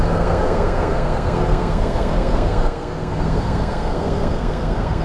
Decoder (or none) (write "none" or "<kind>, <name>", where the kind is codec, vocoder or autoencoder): codec, SNAC